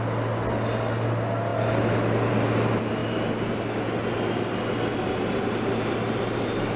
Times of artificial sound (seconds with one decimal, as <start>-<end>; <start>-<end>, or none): none